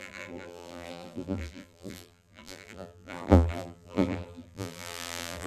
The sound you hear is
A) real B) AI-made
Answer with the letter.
B